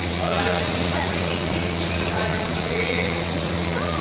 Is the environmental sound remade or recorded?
remade